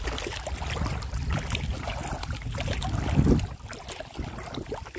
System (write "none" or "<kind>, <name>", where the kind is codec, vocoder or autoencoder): none